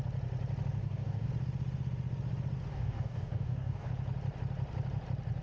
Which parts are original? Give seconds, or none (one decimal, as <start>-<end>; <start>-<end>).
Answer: 0.0-0.8; 1.3-2.7; 3.9-5.4